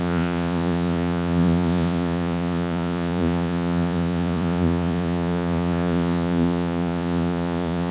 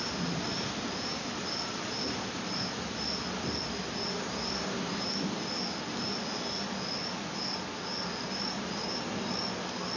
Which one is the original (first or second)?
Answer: second